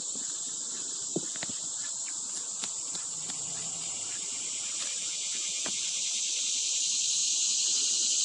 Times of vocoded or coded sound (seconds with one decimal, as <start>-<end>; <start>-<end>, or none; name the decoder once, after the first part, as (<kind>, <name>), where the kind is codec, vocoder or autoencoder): 5.0-5.8 (vocoder, Vocos)